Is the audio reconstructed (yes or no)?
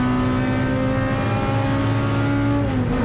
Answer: no